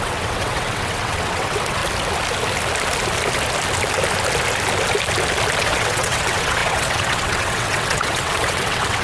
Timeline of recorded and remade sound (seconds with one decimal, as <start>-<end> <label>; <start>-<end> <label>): 0.0-1.8 remade; 1.8-5.6 recorded; 5.6-9.0 remade